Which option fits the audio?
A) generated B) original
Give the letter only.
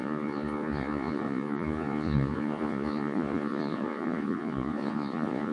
A